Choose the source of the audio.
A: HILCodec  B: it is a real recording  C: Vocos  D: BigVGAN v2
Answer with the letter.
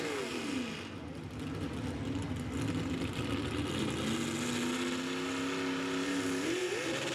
B